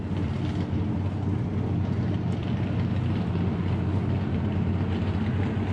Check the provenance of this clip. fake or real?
real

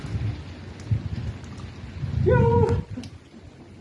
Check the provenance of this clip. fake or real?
real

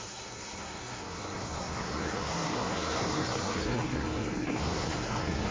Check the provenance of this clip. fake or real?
fake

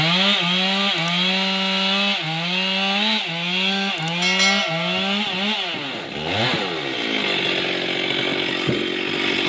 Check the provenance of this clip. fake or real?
real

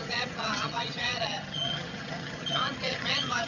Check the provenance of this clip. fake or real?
fake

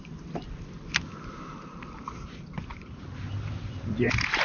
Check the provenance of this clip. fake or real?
real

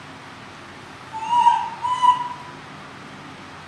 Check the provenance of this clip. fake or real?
real